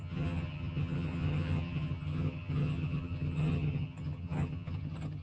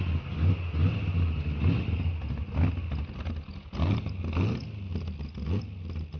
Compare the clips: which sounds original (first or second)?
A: second